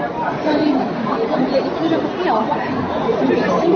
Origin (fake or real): real